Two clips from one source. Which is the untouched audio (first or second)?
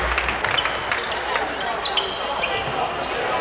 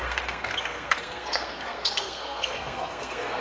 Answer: first